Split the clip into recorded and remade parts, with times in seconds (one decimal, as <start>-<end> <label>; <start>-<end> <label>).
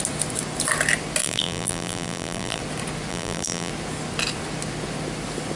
0.0-1.2 recorded; 1.2-2.6 remade; 2.6-3.1 recorded; 3.1-3.7 remade; 3.7-5.6 recorded